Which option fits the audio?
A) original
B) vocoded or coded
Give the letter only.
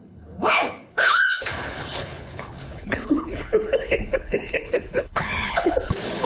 B